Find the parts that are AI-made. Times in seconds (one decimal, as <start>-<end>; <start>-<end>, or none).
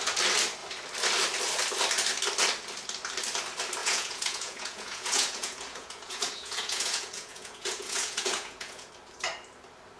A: 3.8-8.9